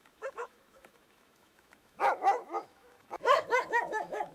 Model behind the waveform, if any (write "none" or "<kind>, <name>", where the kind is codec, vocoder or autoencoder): autoencoder, DAC-VAE